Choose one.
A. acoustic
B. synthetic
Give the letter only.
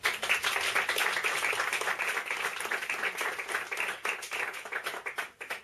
A